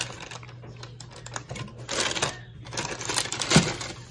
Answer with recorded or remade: recorded